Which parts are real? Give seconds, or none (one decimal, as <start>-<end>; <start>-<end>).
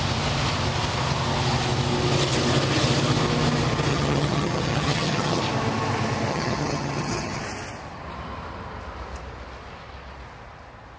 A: 0.0-3.9; 5.4-6.3; 7.4-11.0